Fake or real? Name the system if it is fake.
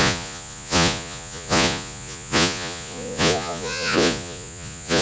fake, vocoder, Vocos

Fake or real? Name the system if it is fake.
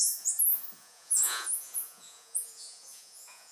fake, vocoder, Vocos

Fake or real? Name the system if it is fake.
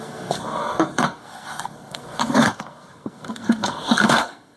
fake, codec, SNAC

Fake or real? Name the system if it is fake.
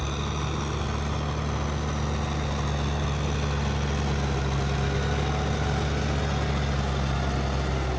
real